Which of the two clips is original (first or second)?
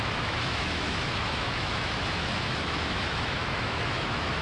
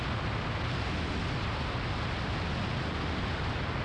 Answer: second